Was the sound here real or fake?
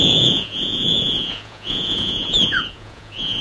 fake